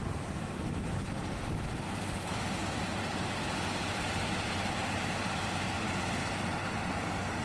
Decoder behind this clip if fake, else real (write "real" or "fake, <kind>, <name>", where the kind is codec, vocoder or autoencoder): fake, vocoder, BigVGAN v2